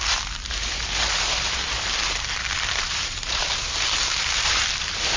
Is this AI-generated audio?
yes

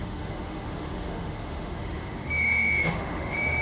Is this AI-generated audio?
yes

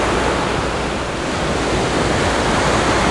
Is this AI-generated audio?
no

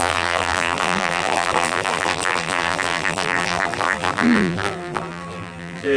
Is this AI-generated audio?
yes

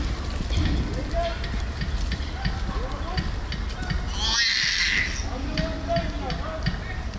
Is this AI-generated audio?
no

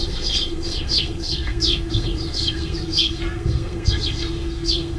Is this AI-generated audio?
yes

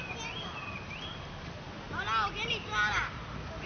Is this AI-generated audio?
no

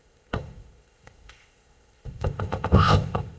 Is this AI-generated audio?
yes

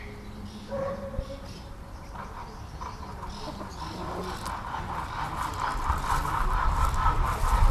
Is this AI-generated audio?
no